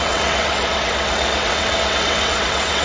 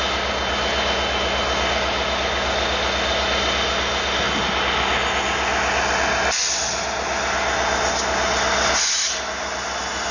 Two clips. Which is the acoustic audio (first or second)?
second